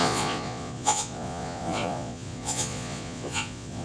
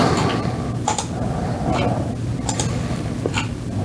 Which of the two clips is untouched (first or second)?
second